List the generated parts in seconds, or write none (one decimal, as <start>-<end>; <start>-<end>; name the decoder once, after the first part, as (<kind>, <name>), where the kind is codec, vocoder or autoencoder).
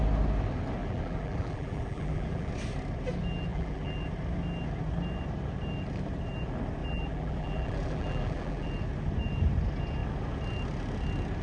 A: 0.8-2.5 (vocoder, BigVGAN v2); 3.5-4.1; 6.8-8.7